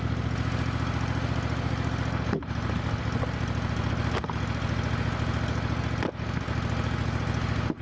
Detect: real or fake real